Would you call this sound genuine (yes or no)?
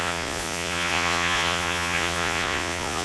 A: no